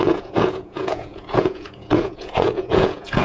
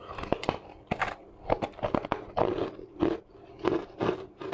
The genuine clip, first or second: second